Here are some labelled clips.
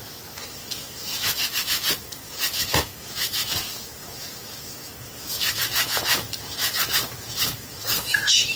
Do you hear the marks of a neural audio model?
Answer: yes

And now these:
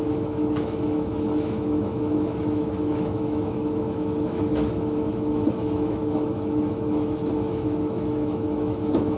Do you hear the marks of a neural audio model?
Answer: yes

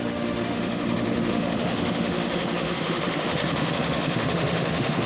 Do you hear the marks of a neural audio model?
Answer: yes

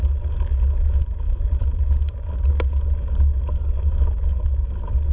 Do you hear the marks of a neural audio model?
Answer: no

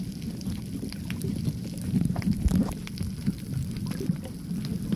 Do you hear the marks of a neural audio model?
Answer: no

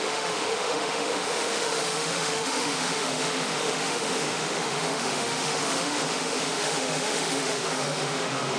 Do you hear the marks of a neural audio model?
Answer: yes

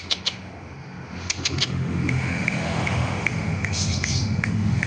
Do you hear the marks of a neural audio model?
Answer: yes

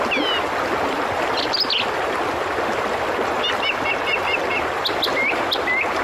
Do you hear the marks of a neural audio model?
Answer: no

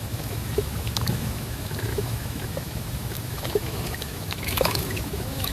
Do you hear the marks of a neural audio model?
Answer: yes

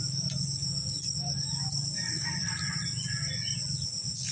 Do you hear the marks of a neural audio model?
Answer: no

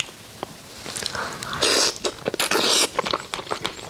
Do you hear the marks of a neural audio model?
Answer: no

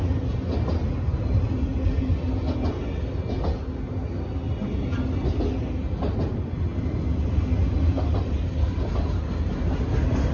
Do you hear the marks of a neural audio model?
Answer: no